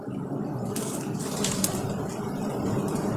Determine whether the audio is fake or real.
real